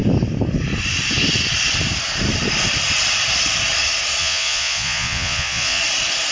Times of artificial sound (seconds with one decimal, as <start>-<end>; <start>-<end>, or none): 4.2-5.8